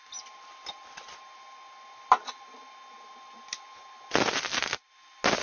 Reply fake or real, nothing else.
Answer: real